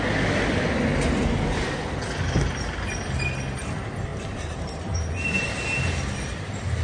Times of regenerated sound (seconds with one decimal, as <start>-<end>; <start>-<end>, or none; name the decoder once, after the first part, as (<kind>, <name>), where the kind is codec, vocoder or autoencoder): 0.9-1.8 (vocoder, BigVGAN v2); 4.1-6.0